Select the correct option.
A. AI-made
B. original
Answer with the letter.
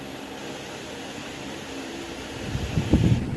A